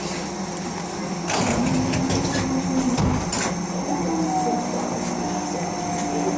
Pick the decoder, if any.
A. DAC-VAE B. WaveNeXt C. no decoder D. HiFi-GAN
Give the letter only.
C